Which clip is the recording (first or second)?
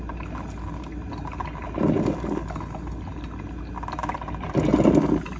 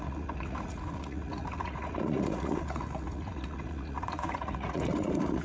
first